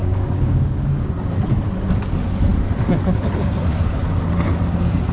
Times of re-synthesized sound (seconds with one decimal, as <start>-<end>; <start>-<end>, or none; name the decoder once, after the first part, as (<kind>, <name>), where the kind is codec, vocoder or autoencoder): 0.0-1.1 (codec, DAC)